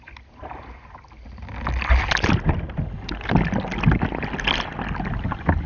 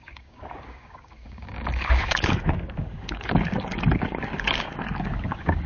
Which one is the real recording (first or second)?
first